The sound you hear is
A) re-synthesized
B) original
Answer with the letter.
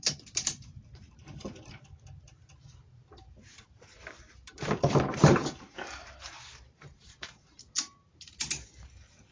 A